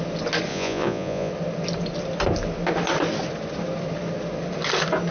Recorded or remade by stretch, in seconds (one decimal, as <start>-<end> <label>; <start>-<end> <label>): 0.0-0.5 recorded; 0.5-1.3 remade; 1.3-5.1 recorded